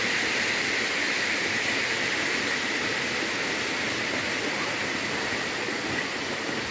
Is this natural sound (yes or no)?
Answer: yes